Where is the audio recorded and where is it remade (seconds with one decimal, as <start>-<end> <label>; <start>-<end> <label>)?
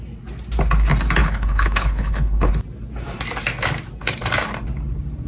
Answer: 0.0-1.2 recorded; 1.2-2.5 remade; 2.5-5.3 recorded